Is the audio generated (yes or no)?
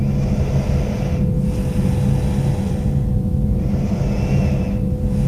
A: no